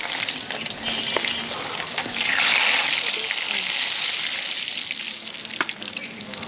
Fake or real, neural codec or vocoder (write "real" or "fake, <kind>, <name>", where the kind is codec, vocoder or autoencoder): real